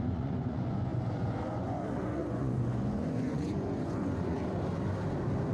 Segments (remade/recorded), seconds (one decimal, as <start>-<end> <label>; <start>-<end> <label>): 0.0-4.4 remade; 4.4-5.5 recorded